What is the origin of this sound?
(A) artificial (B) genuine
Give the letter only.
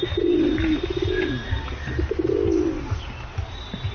B